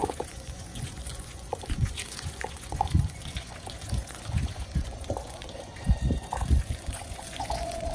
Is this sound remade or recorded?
remade